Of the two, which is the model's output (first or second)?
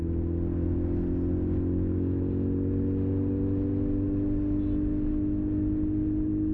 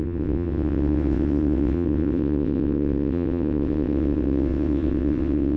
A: second